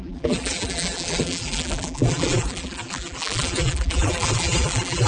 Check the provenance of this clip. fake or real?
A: fake